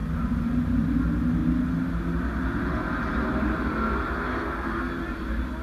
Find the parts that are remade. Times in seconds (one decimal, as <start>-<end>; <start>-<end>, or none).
4.3-4.9